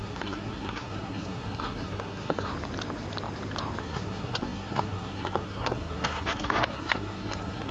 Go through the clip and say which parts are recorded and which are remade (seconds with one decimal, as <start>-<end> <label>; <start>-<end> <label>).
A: 0.0-2.5 remade; 2.5-3.8 recorded; 3.8-7.7 remade